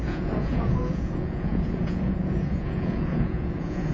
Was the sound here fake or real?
fake